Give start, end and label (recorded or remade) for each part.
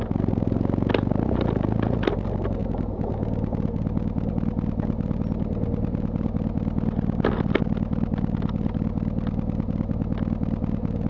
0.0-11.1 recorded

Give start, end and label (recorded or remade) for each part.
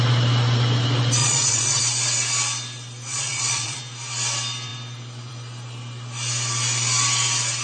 0.0-1.2 recorded; 1.2-1.8 remade; 1.8-3.1 recorded; 3.1-3.8 remade; 3.8-7.6 recorded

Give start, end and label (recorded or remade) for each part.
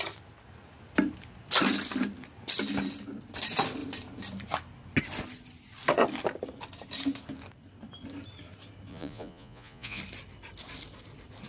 0.0-8.9 recorded; 8.9-10.0 remade; 10.0-11.5 recorded